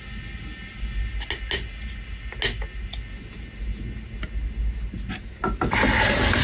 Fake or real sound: real